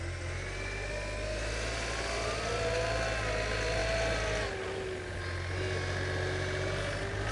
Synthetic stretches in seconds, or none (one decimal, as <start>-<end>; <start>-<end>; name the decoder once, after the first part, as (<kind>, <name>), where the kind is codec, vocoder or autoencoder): none